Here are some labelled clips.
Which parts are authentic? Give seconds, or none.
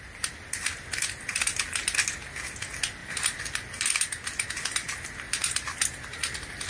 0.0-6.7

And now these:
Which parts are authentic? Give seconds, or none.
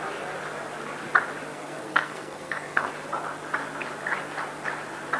0.0-1.5; 2.9-5.2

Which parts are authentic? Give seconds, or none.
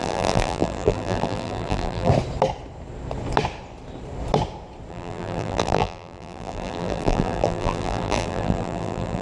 2.1-4.9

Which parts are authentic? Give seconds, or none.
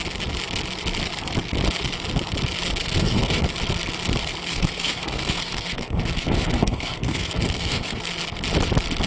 0.0-2.8; 3.4-4.5; 8.0-9.1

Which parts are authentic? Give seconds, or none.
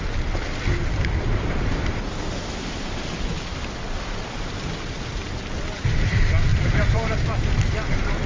0.0-6.5; 7.1-8.3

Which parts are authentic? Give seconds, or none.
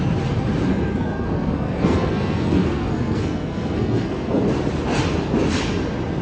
0.0-0.7; 4.4-6.2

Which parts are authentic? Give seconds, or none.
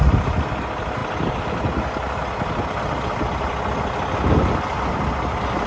0.0-5.7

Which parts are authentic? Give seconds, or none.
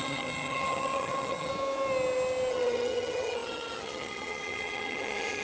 1.5-2.5